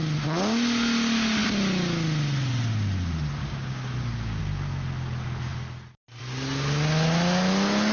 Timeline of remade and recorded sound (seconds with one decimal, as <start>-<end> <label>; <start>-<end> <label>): 0.0-3.4 recorded; 3.4-4.4 remade; 4.4-7.9 recorded